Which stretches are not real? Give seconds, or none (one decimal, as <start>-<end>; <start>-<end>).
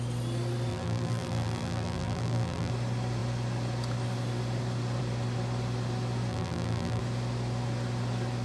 0.7-2.7; 6.3-7.0